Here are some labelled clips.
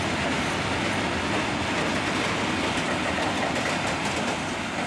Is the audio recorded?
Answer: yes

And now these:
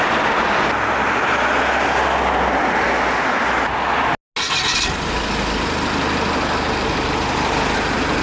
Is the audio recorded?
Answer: yes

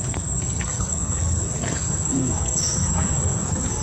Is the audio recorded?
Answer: no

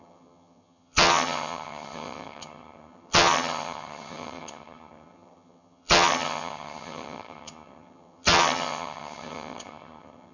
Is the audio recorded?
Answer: no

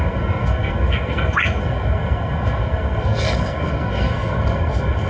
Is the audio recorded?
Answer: no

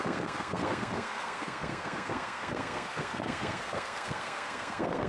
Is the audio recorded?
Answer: no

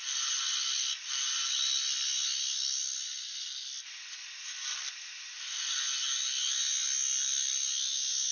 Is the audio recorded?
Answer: yes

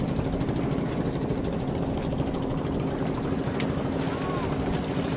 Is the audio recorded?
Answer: yes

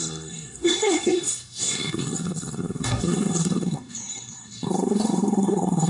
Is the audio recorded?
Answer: no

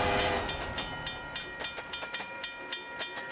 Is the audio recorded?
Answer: yes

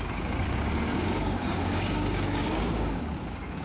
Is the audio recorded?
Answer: no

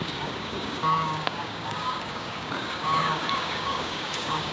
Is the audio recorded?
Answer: no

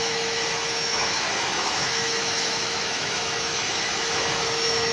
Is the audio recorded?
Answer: no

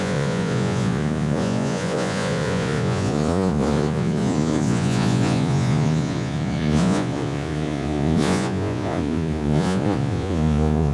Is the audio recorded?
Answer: no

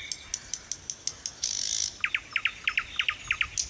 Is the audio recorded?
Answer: yes